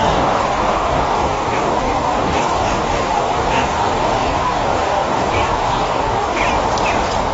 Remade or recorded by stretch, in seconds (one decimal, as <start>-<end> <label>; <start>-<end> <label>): 0.0-6.4 remade; 6.4-7.3 recorded